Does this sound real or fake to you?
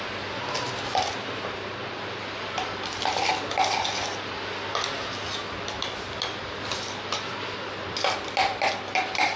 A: real